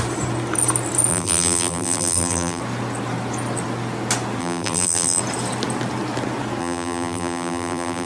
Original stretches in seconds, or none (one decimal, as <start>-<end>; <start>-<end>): 0.0-1.1; 2.6-4.4; 5.2-6.6

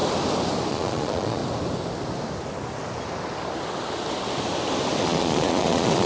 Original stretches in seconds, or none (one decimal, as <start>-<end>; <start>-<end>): 0.0-0.7; 1.4-5.0

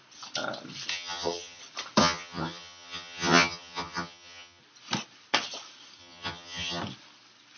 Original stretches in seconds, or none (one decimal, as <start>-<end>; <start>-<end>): 0.0-0.9; 1.6-2.0; 4.6-6.0; 6.8-7.6

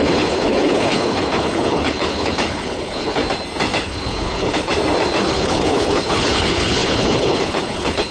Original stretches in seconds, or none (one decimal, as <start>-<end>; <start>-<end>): 3.2-3.8; 4.7-5.2

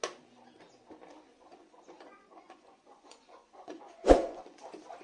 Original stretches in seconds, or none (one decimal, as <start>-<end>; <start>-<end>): 0.0-1.6; 4.6-5.0

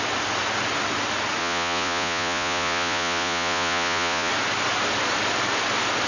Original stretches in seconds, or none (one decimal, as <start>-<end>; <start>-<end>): 0.0-1.4; 4.3-6.1

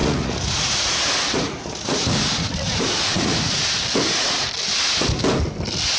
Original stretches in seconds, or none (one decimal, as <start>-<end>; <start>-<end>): 3.6-6.0

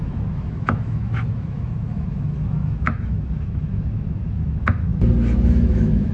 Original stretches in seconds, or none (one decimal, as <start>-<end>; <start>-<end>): 4.9-5.5